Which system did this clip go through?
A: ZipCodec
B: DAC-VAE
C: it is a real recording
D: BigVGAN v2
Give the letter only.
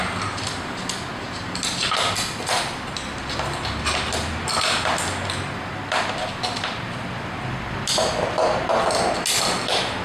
C